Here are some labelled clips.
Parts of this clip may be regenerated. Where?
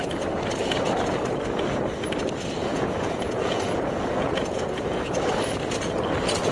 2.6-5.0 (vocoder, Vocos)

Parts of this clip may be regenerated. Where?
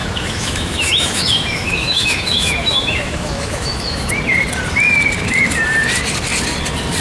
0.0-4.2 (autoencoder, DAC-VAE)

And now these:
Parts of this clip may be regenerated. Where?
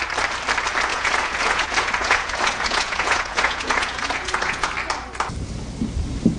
0.9-4.7 (vocoder, Vocos)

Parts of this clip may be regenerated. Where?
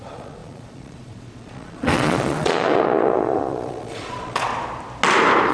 0.0-4.5 (vocoder, Vocos)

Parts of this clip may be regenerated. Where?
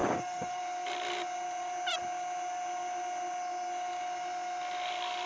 0.0-0.6 (codec, DAC)